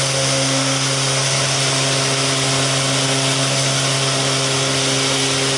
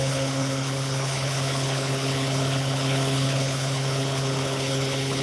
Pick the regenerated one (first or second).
second